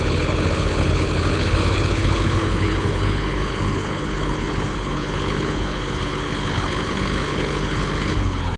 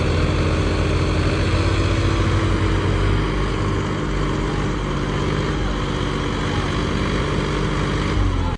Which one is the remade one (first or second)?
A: first